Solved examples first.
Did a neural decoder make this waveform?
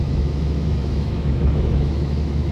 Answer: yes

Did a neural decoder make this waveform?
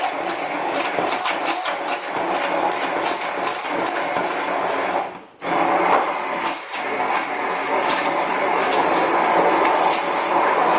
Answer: no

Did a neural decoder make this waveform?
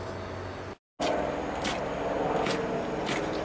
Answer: no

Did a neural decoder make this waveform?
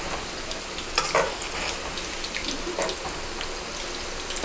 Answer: no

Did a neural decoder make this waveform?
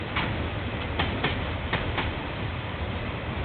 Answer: yes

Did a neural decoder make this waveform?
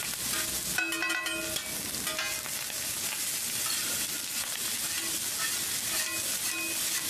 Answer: no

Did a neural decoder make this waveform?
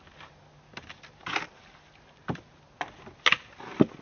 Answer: no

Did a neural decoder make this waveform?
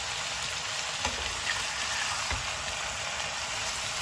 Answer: no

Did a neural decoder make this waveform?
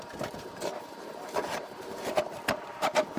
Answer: yes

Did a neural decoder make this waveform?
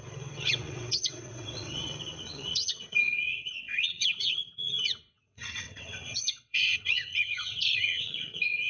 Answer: yes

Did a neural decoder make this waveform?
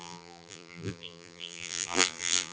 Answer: yes